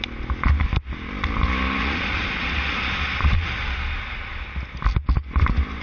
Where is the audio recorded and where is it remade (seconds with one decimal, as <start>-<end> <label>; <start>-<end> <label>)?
0.0-1.8 recorded; 1.8-4.4 remade; 4.4-5.8 recorded